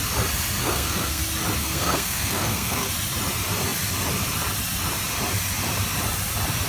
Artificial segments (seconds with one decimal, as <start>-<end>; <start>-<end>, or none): 0.6-1.2; 1.6-2.9